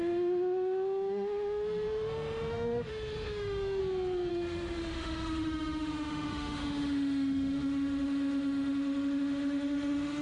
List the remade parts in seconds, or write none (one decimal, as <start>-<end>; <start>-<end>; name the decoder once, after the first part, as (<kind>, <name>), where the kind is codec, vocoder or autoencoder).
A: 0.0-3.8 (autoencoder, DAC-VAE); 4.3-10.2